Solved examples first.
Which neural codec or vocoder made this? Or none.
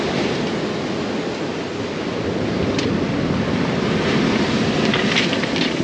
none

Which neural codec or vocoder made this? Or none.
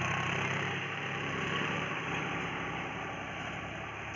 vocoder, BigVGAN v2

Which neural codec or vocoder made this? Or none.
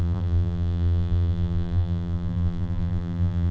vocoder, BigVGAN v2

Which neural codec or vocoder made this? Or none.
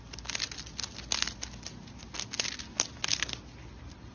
none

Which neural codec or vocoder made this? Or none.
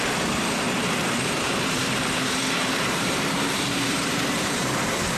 vocoder, BigVGAN v2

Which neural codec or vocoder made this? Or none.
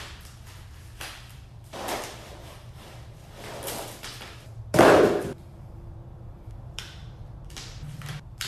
vocoder, BigVGAN v2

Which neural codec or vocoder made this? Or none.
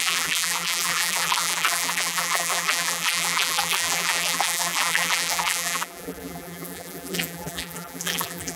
vocoder, BigVGAN v2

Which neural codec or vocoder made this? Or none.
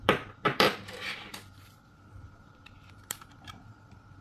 vocoder, BigVGAN v2